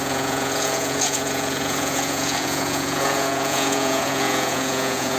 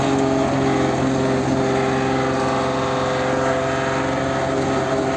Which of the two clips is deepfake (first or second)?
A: first